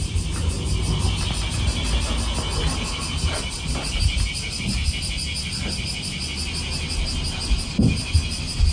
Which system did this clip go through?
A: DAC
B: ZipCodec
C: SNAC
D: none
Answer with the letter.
D